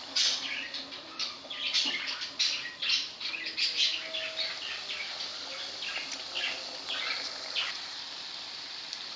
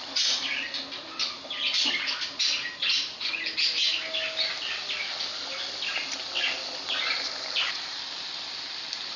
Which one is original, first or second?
second